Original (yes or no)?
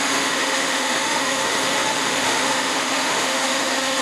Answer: no